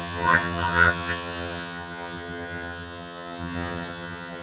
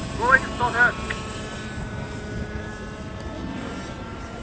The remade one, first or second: first